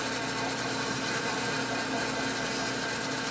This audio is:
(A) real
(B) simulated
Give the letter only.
A